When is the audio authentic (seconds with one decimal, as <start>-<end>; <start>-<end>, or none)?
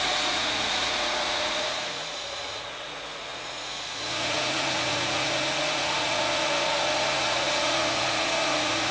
none